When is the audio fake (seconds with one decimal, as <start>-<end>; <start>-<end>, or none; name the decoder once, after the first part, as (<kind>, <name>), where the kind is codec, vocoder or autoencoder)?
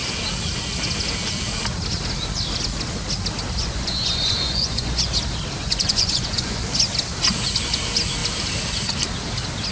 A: 3.6-5.1 (vocoder, Vocos); 5.6-6.6